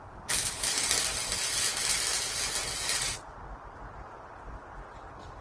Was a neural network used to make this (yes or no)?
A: no